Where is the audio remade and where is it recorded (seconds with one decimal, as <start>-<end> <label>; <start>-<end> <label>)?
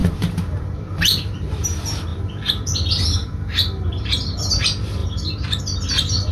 0.0-2.1 remade; 2.1-3.0 recorded; 3.0-6.3 remade